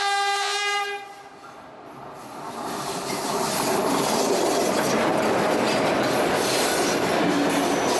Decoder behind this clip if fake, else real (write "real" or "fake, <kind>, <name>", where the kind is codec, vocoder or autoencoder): real